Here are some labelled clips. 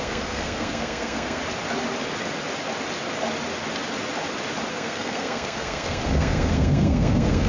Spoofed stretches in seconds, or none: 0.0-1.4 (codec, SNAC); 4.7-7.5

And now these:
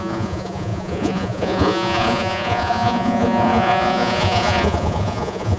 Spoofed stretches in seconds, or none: 0.0-5.6 (vocoder, Vocos)

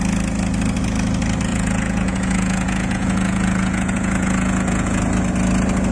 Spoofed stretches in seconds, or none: 1.5-5.0 (vocoder, Vocos)

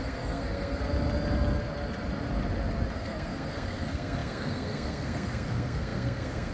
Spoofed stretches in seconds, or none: 0.0-0.8 (codec, SNAC); 3.0-6.5

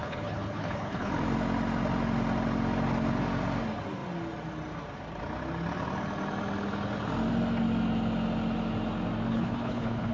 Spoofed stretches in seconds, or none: 0.0-1.1 (codec, HILCodec); 9.3-10.1

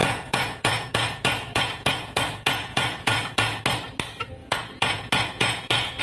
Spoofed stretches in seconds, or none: 0.0-3.6 (vocoder, Vocos); 4.4-6.0

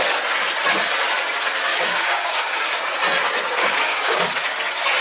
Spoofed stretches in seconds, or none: 1.7-2.8 (codec, DAC); 3.6-4.2